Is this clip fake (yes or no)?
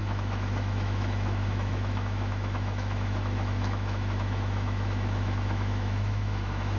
yes